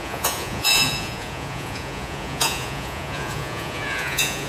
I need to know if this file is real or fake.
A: fake